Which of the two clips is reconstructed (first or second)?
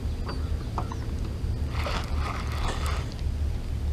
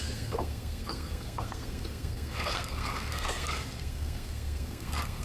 second